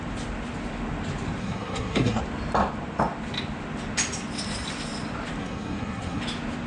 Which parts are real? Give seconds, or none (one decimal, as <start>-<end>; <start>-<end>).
0.0-1.4; 2.2-5.4; 6.2-6.7